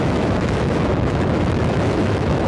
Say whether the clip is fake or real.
fake